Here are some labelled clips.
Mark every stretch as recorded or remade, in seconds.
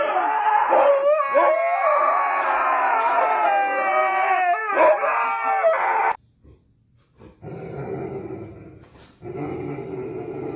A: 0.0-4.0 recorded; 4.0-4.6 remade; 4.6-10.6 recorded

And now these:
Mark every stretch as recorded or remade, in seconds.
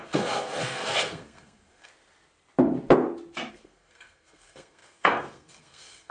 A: 0.0-1.9 remade; 1.9-3.5 recorded; 3.5-6.1 remade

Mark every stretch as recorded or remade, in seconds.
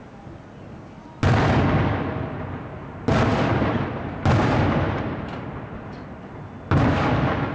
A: 0.0-7.5 recorded